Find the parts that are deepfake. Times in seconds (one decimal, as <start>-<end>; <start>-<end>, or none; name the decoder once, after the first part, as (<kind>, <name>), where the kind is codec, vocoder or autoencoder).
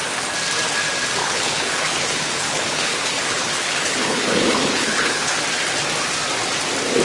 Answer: 1.2-5.4 (codec, HILCodec)